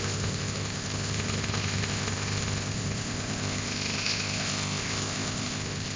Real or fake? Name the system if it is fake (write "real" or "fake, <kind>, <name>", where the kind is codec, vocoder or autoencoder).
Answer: fake, codec, ZipCodec